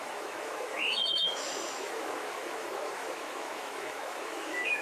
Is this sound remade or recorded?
remade